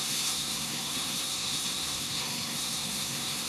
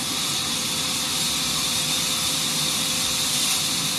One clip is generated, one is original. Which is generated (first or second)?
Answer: first